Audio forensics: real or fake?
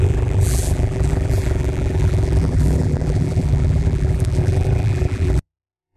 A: fake